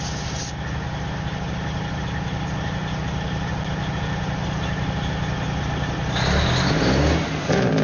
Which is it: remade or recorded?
recorded